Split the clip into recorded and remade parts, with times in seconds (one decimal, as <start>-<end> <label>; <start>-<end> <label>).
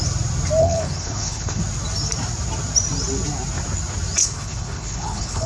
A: 0.0-0.6 recorded; 0.6-1.6 remade; 1.6-4.2 recorded; 4.2-5.5 remade